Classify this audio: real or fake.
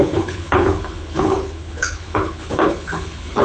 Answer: fake